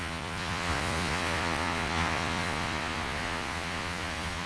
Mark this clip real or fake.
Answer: fake